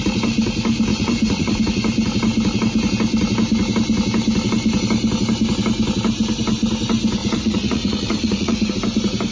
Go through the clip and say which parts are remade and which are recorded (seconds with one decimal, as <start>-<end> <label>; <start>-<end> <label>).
0.0-0.9 recorded; 0.9-1.6 remade; 1.6-7.2 recorded; 7.2-8.7 remade; 8.7-9.3 recorded